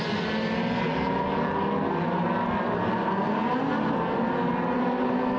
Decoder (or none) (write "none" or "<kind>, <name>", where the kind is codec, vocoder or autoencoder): none